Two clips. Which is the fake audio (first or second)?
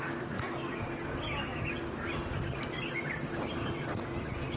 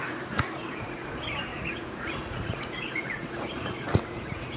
second